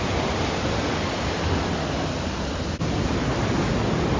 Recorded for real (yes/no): yes